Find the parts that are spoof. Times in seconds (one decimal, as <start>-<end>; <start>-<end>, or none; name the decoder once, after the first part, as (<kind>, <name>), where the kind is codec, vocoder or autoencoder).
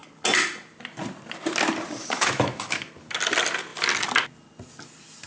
2.0-2.9 (autoencoder, DAC-VAE)